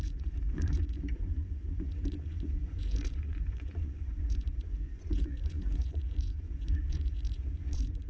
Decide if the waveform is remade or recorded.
remade